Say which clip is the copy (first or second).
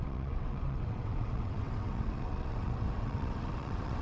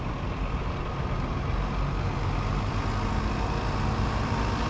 first